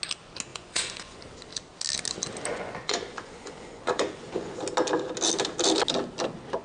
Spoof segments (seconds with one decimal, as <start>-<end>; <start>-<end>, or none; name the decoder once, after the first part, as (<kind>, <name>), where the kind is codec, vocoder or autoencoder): 0.5-1.2 (vocoder, Vocos); 2.5-4.6

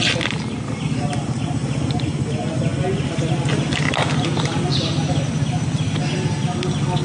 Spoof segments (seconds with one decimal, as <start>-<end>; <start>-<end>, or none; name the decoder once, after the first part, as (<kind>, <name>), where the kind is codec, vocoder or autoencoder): none

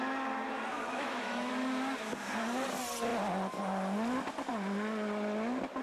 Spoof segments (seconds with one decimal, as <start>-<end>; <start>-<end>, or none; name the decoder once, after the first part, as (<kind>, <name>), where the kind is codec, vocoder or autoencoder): 0.7-1.5 (autoencoder, DAC-VAE)